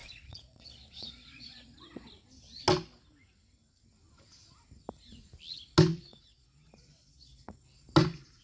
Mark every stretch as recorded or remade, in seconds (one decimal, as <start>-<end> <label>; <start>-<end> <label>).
0.0-2.1 remade; 2.1-5.9 recorded; 5.9-7.6 remade; 7.6-8.4 recorded